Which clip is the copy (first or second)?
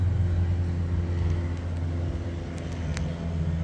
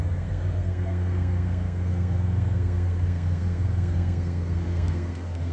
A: second